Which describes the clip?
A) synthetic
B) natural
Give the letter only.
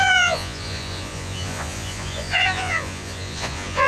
A